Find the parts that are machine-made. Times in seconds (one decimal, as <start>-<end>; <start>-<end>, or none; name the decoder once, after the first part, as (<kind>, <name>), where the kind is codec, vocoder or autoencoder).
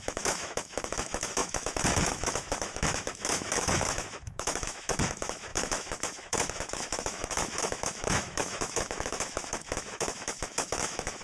0.0-11.2 (autoencoder, DAC-VAE)